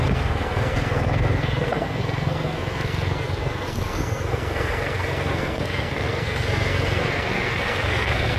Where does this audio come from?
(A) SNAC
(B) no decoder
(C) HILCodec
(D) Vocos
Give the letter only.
A